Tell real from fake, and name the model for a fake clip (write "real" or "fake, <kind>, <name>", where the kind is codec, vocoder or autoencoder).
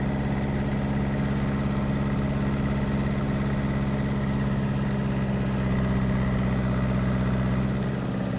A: real